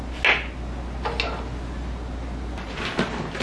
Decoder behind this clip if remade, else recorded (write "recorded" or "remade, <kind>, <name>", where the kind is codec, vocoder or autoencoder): recorded